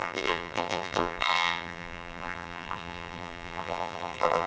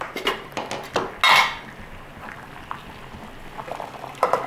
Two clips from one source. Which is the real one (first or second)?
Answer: second